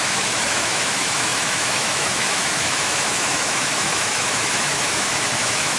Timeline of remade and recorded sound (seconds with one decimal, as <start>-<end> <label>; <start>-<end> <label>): 0.0-5.8 remade